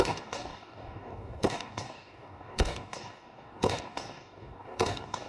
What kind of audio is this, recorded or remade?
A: remade